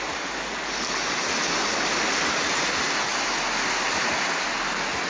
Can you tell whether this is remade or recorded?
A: recorded